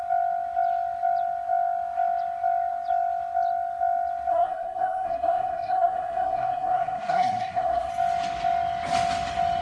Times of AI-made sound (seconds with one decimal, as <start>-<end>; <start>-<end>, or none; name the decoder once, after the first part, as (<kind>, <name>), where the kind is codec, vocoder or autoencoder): 4.3-7.9 (codec, SNAC)